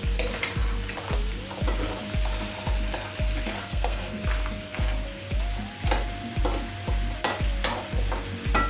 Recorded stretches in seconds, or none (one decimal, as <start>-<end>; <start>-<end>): 0.0-3.6; 4.2-8.7